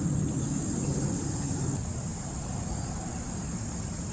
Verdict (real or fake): real